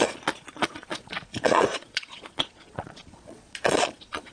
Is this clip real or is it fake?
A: fake